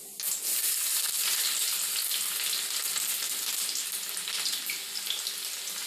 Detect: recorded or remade recorded